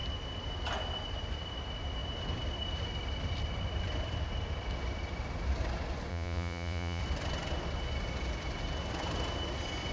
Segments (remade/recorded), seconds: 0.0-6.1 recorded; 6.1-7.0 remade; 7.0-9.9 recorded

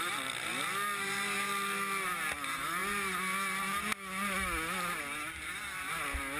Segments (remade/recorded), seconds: 0.0-6.4 recorded

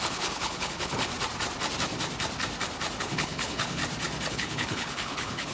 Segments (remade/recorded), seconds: 0.0-1.1 remade; 1.1-3.0 recorded; 3.0-3.8 remade; 3.8-4.3 recorded; 4.3-5.5 remade